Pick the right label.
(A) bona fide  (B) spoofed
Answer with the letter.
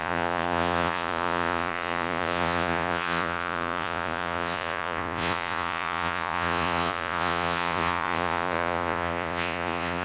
B